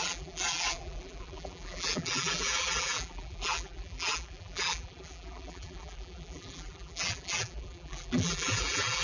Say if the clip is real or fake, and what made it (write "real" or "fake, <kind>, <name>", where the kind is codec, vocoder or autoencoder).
fake, vocoder, BigVGAN v2